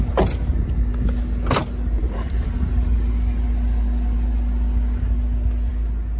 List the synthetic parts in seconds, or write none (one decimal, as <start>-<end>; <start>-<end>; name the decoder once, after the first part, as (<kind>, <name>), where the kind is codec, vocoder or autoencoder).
none